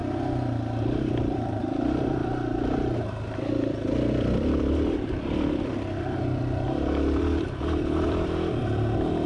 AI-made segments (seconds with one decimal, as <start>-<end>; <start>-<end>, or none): 0.8-2.2; 3.5-9.3